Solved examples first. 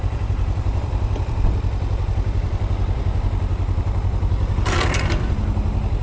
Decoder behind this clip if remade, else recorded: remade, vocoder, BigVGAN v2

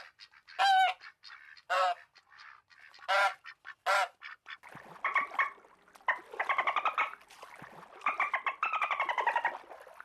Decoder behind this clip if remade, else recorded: recorded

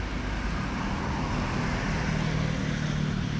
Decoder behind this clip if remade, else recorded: recorded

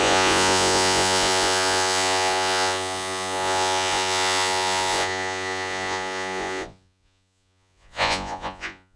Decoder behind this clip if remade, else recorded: remade, vocoder, Vocos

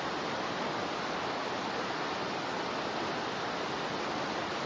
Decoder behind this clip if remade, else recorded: recorded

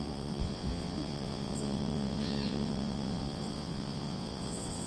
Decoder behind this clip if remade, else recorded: remade, vocoder, WaveNeXt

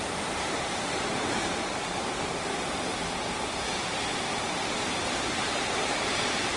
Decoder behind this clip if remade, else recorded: remade, vocoder, BigVGAN v2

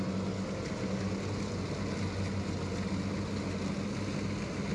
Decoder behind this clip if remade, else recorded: recorded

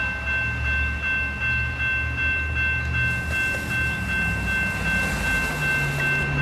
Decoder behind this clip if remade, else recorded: recorded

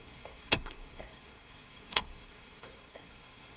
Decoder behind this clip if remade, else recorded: remade, codec, SNAC